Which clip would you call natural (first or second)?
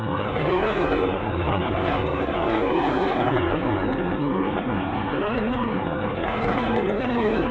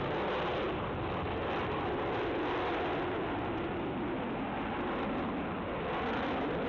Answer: second